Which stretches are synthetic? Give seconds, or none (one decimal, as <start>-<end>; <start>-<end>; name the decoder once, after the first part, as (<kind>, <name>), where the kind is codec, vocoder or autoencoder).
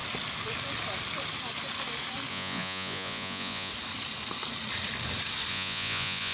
2.3-3.7 (vocoder, Vocos); 5.5-6.3